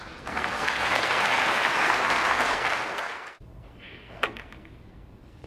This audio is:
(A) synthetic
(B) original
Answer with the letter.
A